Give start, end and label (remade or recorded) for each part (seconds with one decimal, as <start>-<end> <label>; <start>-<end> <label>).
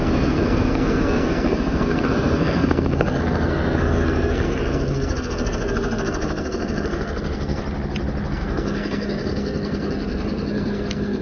0.0-7.6 remade; 7.6-8.3 recorded; 8.3-11.2 remade